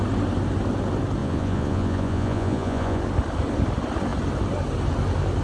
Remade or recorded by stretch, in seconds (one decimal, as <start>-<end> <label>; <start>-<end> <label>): 0.0-1.2 recorded; 1.2-3.0 remade; 3.0-5.4 recorded